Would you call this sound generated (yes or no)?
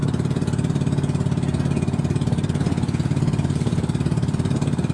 no